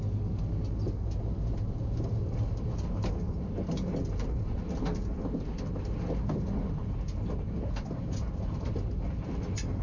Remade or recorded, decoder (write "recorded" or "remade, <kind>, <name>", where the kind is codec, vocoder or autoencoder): recorded